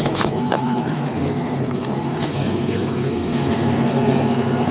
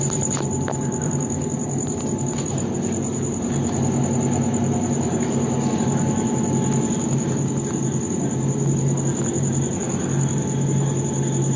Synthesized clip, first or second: first